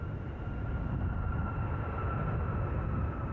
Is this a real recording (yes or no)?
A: yes